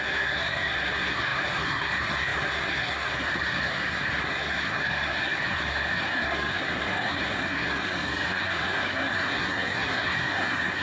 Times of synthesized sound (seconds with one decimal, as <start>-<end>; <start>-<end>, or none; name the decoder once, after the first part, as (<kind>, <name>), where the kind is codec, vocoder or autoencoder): 0.0-10.8 (codec, SNAC)